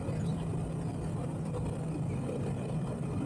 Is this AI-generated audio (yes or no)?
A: no